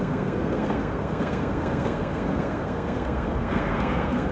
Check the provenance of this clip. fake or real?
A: fake